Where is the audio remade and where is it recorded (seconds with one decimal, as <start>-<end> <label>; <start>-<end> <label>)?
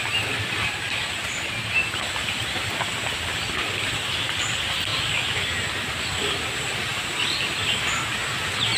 0.0-8.8 recorded